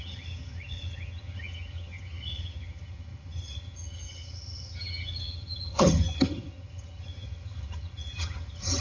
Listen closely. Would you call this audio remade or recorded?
remade